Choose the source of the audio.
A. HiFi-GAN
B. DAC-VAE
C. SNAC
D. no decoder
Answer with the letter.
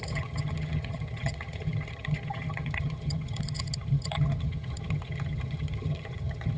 A